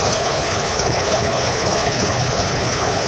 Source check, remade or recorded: remade